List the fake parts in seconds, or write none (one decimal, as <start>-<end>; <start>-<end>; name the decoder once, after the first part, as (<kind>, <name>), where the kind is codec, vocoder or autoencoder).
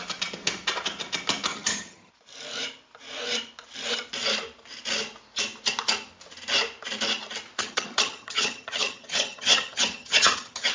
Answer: 1.5-2.1 (vocoder, HiFi-GAN); 7.6-10.7